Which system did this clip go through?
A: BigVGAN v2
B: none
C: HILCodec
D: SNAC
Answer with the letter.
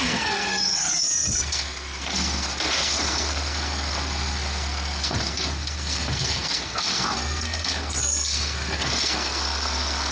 D